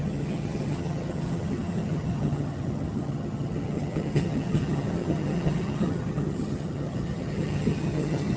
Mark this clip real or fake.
fake